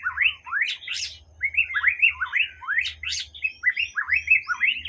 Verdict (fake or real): real